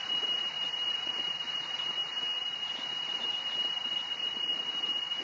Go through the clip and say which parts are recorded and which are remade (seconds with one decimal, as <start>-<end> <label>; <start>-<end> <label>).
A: 0.0-5.2 remade